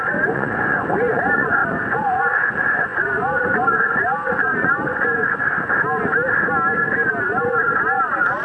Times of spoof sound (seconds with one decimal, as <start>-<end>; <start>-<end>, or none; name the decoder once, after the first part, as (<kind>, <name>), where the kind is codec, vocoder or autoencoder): 0.0-5.4 (vocoder, Vocos); 7.2-8.4